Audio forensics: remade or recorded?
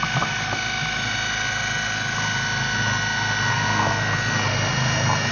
recorded